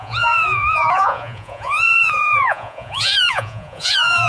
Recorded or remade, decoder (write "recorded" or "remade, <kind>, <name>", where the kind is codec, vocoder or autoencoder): remade, vocoder, Vocos